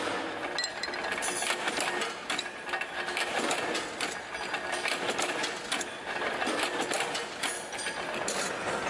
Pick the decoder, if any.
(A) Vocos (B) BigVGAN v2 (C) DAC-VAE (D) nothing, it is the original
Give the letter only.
D